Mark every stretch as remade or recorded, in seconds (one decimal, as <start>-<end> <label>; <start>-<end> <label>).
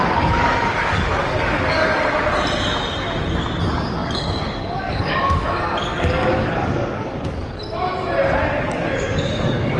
0.0-1.9 remade; 1.9-3.6 recorded; 3.6-5.4 remade; 5.4-6.0 recorded; 6.0-7.6 remade; 7.6-8.6 recorded; 8.6-9.8 remade